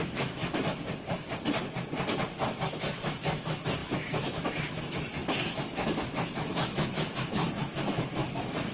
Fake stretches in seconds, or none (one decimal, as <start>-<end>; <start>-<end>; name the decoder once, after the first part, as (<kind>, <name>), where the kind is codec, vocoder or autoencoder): 0.0-0.4 (autoencoder, DAC-VAE); 2.6-8.7